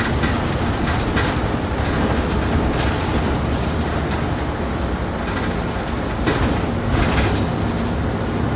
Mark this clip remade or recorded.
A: recorded